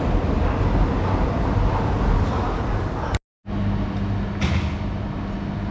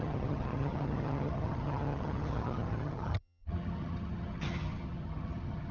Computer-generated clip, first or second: second